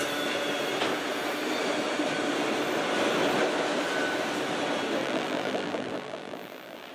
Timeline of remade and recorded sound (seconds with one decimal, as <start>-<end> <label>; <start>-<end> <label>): 0.0-5.0 recorded; 5.0-6.9 remade